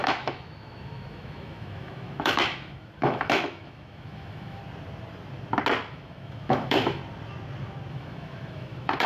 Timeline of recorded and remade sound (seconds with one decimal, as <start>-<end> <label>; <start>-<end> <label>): 0.0-4.6 remade; 4.6-5.9 recorded; 5.9-7.0 remade; 7.0-7.9 recorded; 7.9-9.1 remade